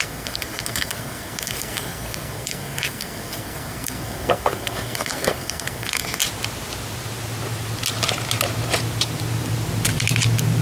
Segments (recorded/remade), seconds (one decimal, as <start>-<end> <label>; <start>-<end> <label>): 0.0-6.2 remade; 6.2-10.6 recorded